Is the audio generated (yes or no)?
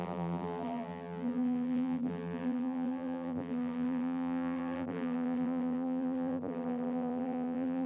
yes